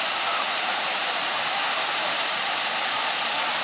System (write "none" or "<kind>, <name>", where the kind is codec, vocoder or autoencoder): vocoder, BigVGAN v2